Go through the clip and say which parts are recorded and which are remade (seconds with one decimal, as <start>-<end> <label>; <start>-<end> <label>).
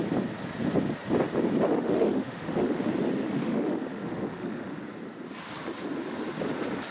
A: 0.0-1.7 recorded; 1.7-2.9 remade; 2.9-3.4 recorded; 3.4-4.8 remade; 4.8-6.9 recorded